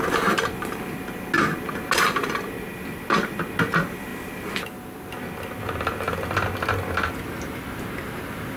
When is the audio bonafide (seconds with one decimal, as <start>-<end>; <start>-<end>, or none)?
0.0-8.6